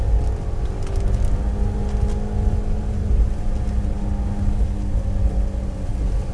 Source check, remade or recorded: recorded